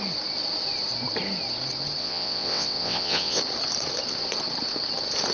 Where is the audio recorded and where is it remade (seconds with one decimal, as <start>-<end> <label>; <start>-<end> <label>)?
0.0-2.0 recorded; 2.0-3.4 remade; 3.4-5.3 recorded